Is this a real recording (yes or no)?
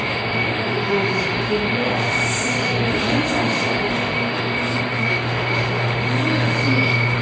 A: no